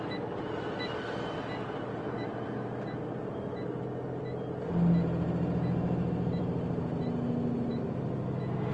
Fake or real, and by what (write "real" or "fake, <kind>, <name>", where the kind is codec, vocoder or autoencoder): real